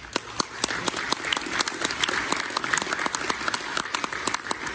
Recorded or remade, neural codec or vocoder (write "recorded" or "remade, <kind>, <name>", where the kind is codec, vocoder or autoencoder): recorded